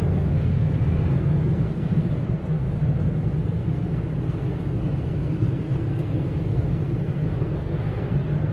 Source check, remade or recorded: remade